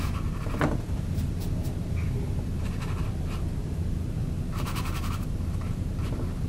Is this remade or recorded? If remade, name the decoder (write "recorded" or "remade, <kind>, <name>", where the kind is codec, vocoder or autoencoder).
remade, vocoder, BigVGAN v2